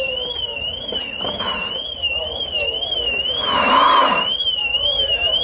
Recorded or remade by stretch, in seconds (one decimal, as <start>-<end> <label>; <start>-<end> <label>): 0.0-4.6 recorded; 4.6-5.4 remade